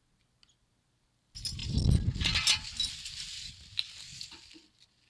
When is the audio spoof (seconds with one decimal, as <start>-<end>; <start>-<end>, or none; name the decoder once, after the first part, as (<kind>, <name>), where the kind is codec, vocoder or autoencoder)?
none